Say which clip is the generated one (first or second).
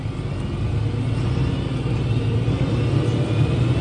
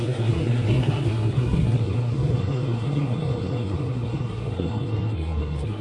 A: second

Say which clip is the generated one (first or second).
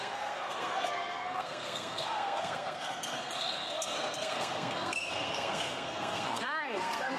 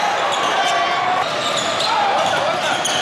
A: first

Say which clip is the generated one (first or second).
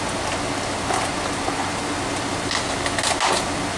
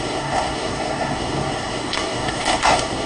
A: second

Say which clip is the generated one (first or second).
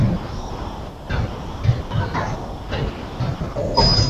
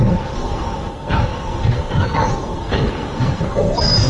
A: second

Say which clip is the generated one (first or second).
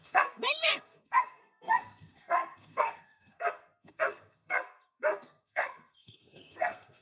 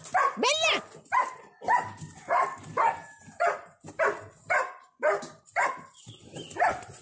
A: first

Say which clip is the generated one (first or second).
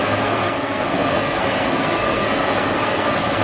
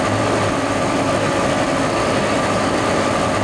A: first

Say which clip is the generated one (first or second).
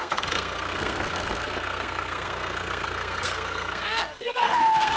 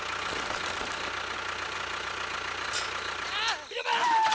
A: first